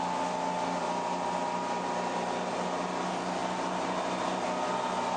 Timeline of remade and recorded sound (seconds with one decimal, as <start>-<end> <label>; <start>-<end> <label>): 0.0-5.2 recorded